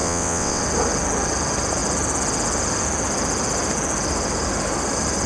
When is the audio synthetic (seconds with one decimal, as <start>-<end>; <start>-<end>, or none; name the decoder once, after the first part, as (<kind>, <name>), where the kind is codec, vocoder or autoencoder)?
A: 0.0-0.6 (vocoder, WaveNeXt)